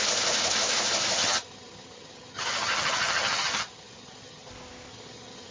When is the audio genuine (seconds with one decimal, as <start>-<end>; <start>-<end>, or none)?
0.0-1.2; 4.5-4.9